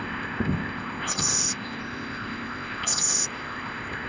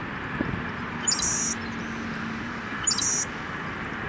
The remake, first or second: first